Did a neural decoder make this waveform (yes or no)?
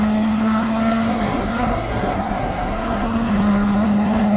yes